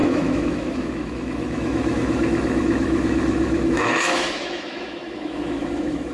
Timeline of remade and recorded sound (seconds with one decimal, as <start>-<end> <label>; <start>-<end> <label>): 0.0-6.1 remade